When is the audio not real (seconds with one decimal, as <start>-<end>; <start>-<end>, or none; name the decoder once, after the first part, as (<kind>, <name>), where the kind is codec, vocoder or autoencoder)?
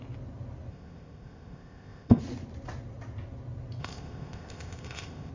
0.7-2.2 (codec, ZipCodec); 3.8-5.3